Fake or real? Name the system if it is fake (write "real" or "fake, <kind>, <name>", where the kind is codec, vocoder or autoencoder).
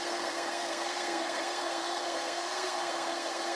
fake, codec, SNAC